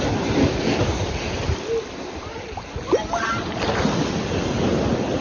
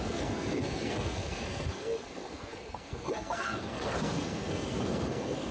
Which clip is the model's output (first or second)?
second